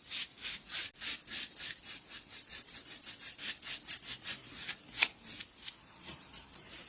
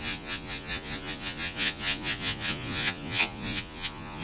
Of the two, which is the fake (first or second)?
second